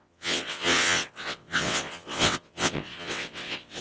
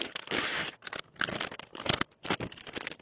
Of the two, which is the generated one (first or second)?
first